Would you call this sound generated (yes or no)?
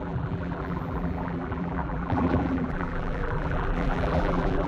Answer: yes